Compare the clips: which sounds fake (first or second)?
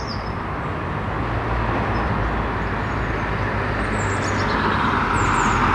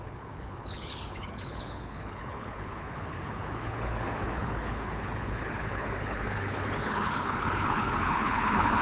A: second